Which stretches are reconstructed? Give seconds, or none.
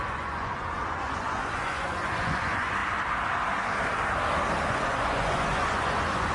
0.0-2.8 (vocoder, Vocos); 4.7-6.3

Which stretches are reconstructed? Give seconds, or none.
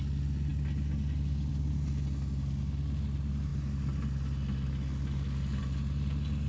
none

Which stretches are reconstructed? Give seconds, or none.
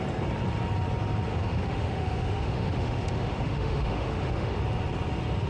1.3-4.6 (autoencoder, DAC-VAE)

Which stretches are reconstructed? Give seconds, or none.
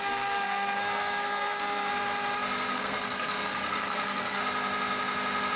0.0-1.9 (codec, SNAC); 2.7-4.4